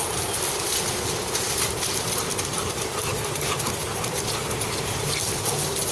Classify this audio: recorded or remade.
recorded